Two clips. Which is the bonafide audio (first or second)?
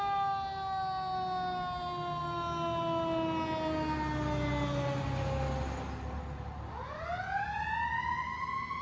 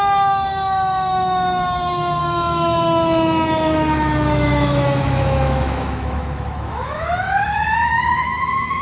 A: first